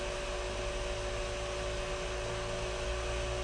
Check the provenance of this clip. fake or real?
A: real